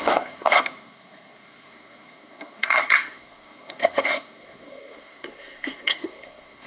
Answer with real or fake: fake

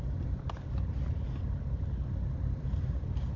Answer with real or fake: real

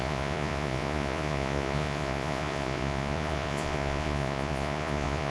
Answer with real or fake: fake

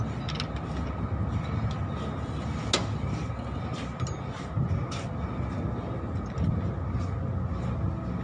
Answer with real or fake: real